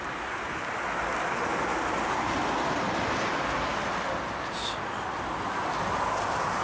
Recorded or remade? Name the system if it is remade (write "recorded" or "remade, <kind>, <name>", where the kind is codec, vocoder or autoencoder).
recorded